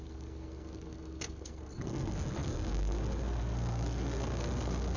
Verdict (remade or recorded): remade